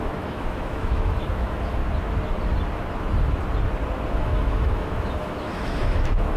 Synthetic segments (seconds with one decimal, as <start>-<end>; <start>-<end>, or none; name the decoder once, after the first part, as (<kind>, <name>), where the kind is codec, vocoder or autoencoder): 0.0-1.8 (autoencoder, DAC-VAE); 4.1-6.4